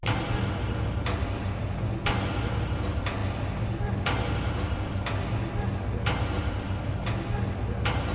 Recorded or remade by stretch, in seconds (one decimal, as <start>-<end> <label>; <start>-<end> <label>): 0.0-8.1 recorded

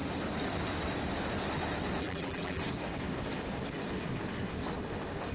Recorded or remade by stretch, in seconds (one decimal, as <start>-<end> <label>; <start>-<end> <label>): 0.0-2.0 recorded; 2.0-2.6 remade; 2.6-5.3 recorded

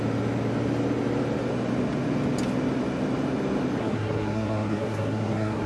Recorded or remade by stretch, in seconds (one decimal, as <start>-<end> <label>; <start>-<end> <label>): 0.0-3.8 recorded; 3.8-5.7 remade

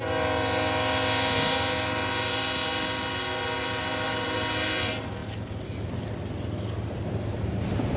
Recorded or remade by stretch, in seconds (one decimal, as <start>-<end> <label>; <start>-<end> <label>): 0.0-8.0 recorded